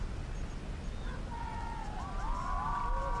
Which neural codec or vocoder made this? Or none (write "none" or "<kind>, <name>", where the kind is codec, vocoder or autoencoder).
none